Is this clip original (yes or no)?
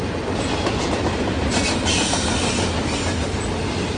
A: yes